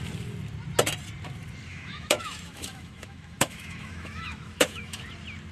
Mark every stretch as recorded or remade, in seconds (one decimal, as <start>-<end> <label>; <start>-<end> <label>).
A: 0.0-1.7 recorded; 1.7-5.0 remade; 5.0-5.5 recorded